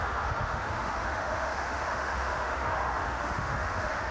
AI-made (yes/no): yes